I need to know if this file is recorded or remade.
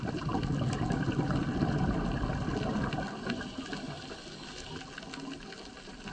recorded